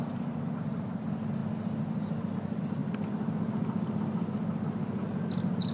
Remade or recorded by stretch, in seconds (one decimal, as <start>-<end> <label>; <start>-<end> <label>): 0.0-5.7 recorded